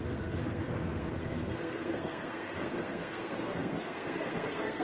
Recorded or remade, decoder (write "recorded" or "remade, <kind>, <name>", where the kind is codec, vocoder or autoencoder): remade, codec, SNAC